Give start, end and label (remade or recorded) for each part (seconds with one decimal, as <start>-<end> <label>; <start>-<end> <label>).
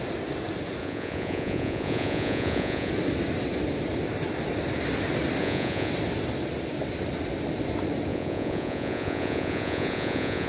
0.0-0.8 recorded; 0.8-2.9 remade; 2.9-5.4 recorded; 5.4-5.9 remade; 5.9-8.1 recorded; 8.1-10.5 remade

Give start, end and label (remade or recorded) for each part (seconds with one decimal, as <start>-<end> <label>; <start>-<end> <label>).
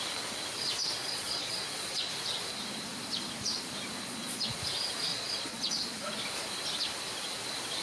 0.0-1.0 recorded; 1.0-2.1 remade; 2.1-4.0 recorded; 4.0-4.6 remade; 4.6-5.1 recorded; 5.1-5.7 remade; 5.7-7.8 recorded